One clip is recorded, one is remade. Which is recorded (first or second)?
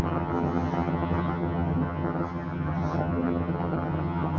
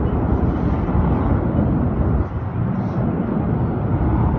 second